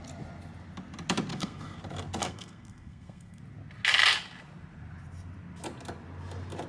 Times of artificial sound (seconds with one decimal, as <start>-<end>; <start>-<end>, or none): 1.3-1.8; 2.2-3.4